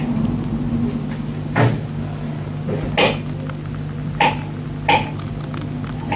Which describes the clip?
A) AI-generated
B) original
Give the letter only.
B